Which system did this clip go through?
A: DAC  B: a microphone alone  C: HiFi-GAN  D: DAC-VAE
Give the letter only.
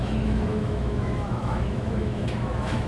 D